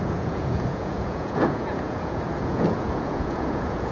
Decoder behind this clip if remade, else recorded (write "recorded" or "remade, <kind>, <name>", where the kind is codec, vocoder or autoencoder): remade, vocoder, Vocos